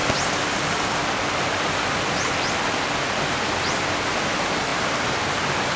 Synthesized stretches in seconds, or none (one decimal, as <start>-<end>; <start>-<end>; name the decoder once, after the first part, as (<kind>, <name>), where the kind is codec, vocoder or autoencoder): none